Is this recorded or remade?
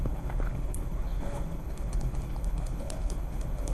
remade